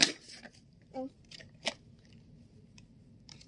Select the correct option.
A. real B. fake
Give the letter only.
B